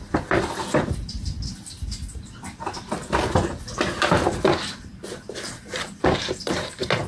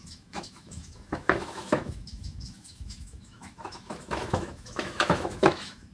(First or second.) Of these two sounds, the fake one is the second